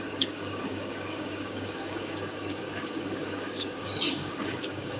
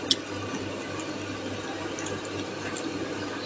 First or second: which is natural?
second